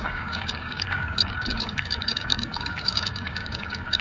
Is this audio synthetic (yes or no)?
yes